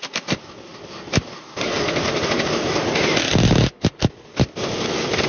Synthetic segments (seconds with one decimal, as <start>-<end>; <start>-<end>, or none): none